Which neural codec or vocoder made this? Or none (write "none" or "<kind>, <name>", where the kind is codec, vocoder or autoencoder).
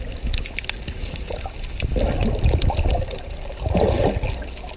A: none